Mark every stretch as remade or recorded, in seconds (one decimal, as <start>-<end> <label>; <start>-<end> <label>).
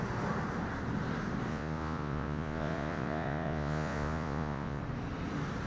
0.0-1.5 recorded; 1.5-4.8 remade; 4.8-5.7 recorded